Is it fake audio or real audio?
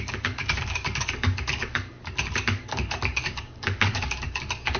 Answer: fake